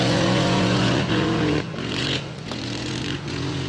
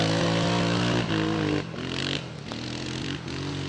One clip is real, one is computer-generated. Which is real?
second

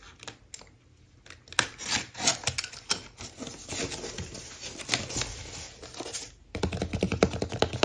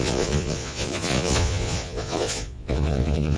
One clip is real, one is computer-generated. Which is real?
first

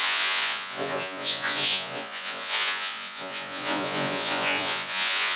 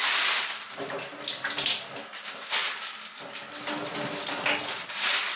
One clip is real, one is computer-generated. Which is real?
second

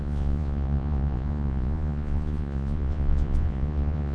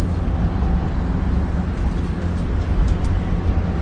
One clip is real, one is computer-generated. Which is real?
second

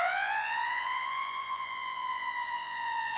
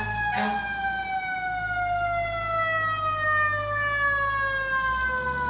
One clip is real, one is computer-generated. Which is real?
second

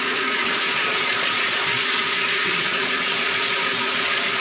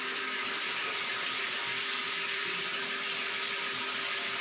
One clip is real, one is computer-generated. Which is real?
second